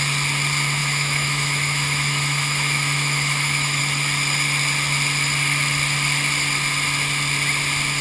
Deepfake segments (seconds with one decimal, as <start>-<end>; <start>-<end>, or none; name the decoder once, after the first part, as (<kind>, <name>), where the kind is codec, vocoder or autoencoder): 0.8-3.8 (autoencoder, DAC-VAE)